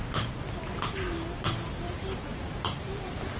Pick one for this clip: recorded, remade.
recorded